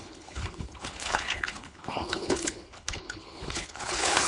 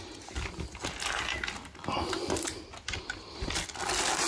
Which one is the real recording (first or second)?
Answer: second